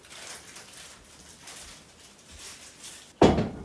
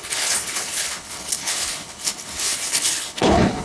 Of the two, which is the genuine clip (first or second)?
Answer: first